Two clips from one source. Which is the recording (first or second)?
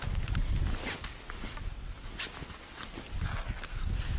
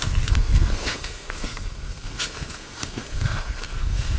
first